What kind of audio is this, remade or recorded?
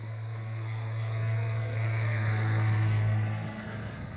remade